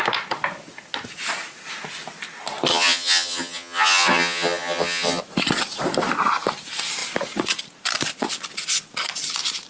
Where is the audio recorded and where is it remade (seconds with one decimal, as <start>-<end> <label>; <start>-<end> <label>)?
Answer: 0.0-2.7 recorded; 2.7-5.2 remade; 5.2-9.7 recorded